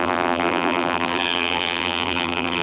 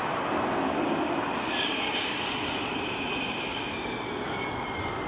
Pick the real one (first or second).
second